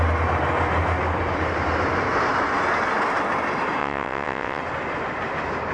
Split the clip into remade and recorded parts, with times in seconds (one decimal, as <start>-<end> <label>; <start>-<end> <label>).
0.0-3.8 recorded; 3.8-4.6 remade; 4.6-5.7 recorded